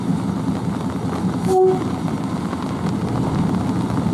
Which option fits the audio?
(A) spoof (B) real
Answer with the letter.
B